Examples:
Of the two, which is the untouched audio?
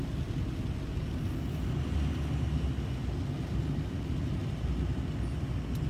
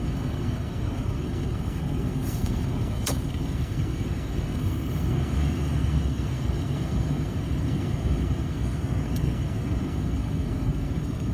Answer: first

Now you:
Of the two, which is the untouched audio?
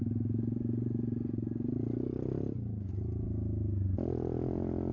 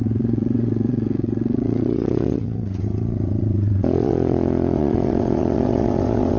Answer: first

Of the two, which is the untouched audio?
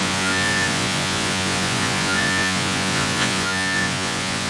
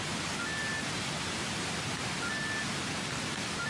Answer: second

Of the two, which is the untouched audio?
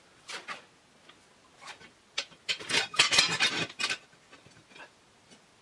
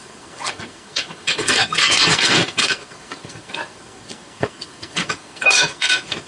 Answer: first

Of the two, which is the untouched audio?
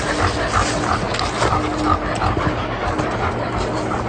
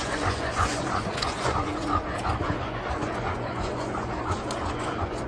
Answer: first